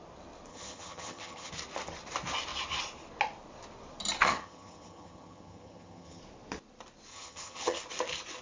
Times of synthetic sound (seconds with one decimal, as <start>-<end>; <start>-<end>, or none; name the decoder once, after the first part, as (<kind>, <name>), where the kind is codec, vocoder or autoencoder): 0.5-1.5 (vocoder, HiFi-GAN); 4.2-6.2; 7.1-7.8

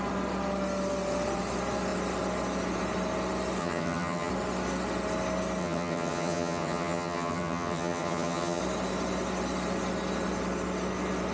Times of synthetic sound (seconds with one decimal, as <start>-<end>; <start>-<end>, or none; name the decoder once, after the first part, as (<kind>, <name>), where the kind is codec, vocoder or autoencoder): 3.6-4.3 (vocoder, HiFi-GAN); 5.6-8.6

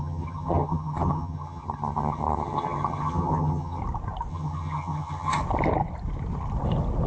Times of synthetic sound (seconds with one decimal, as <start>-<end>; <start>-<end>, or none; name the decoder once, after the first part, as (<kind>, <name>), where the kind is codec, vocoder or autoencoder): 0.0-3.8 (vocoder, HiFi-GAN); 4.3-5.4

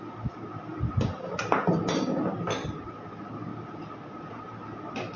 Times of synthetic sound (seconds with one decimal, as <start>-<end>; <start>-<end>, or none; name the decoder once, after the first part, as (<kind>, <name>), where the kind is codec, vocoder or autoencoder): none

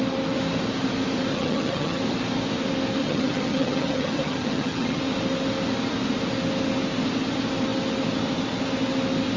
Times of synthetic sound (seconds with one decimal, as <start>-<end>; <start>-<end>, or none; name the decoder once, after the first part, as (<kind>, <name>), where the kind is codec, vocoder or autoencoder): 1.3-2.0 (vocoder, HiFi-GAN); 3.0-5.0

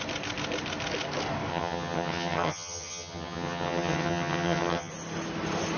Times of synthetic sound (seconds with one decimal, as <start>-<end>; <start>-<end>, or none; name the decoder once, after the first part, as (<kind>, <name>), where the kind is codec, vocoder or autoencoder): 1.5-4.9 (vocoder, HiFi-GAN)

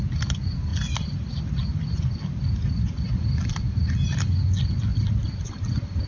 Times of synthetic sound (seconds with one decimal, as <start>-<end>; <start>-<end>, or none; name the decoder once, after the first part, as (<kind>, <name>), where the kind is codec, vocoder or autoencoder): none

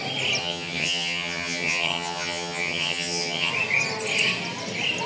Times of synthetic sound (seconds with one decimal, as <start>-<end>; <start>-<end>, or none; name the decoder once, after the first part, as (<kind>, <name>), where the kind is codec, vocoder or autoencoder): 0.4-3.5 (vocoder, HiFi-GAN)